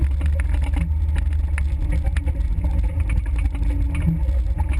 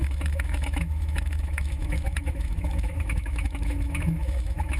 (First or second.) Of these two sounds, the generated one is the second